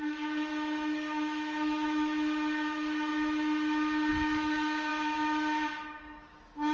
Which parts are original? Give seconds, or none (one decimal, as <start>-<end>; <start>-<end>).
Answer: 3.1-4.1; 4.9-6.2